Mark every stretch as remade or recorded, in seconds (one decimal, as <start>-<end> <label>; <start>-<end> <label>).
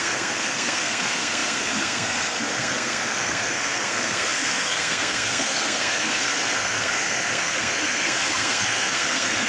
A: 0.0-9.5 remade